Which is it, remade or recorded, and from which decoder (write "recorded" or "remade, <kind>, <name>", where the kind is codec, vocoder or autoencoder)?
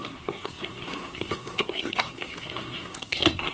remade, codec, SNAC